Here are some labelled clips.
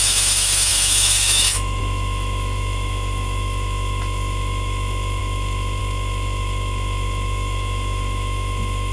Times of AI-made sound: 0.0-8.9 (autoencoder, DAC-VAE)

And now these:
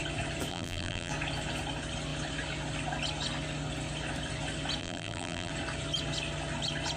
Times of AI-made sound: 0.5-1.1 (vocoder, BigVGAN v2); 4.8-5.5